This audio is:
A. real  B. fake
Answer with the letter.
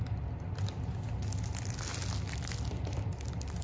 A